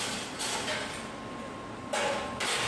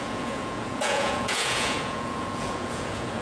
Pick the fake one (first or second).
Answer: second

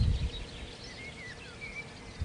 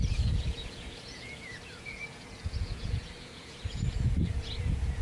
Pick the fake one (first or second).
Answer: second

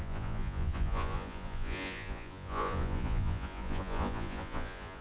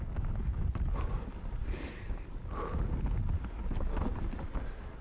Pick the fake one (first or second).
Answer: first